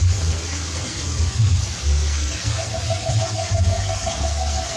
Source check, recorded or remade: remade